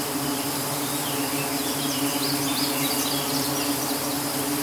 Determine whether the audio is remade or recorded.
recorded